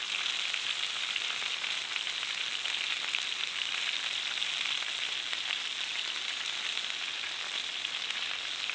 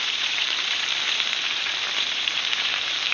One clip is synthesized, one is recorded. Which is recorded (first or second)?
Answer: first